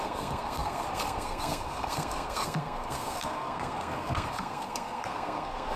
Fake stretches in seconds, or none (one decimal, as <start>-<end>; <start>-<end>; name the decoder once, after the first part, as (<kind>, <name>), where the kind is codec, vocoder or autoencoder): 0.0-5.8 (codec, SNAC)